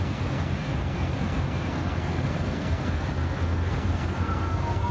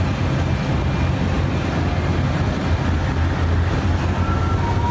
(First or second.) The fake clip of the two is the first